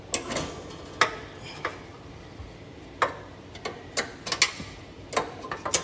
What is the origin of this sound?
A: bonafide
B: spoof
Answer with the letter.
A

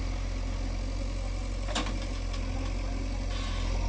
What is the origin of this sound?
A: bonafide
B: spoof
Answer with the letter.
A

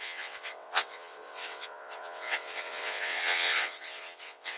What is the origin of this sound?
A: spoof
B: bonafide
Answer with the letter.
A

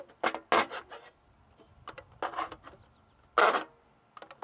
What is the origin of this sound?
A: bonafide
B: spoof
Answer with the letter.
A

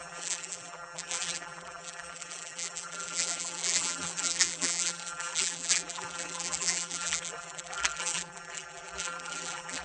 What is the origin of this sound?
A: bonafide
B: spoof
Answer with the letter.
B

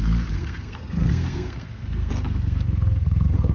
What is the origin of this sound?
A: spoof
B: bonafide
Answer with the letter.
A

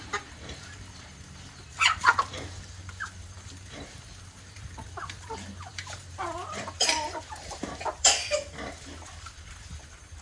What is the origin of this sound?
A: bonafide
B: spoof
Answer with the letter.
B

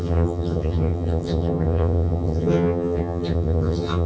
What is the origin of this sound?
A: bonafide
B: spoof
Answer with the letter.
B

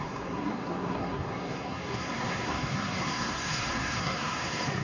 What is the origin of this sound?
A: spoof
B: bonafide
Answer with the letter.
A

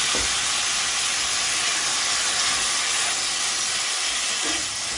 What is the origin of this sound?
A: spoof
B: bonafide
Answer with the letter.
B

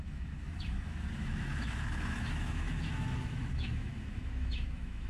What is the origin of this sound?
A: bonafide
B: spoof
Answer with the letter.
B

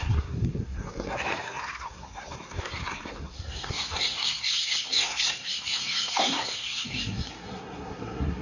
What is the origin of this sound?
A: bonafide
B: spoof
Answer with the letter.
B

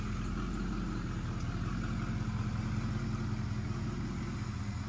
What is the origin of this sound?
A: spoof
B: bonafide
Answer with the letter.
B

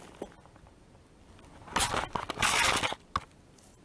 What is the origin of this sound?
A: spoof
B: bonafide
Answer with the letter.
B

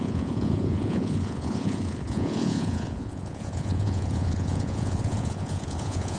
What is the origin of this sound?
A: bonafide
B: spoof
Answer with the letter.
B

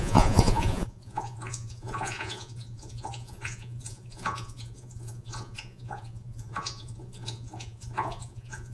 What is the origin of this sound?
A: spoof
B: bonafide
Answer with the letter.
A